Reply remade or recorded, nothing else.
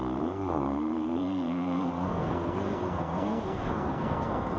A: remade